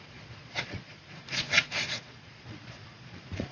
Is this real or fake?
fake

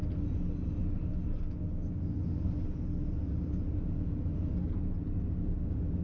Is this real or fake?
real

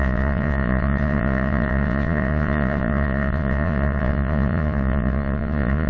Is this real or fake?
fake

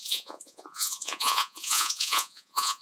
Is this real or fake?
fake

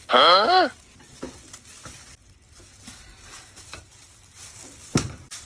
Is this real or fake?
real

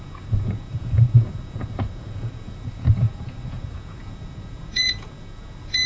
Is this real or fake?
fake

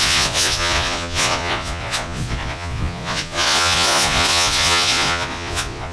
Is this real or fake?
fake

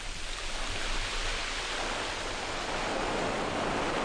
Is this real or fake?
real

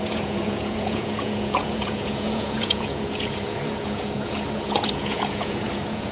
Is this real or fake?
fake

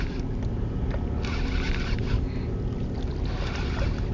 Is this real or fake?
real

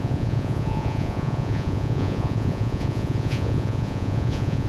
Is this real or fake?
fake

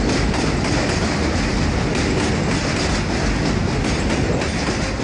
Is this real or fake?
real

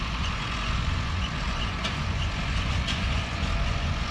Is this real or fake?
fake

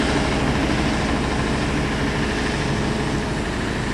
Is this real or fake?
real